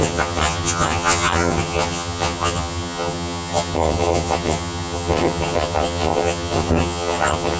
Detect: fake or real fake